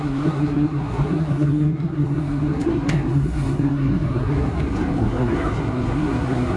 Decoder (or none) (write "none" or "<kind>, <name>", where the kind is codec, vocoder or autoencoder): codec, SNAC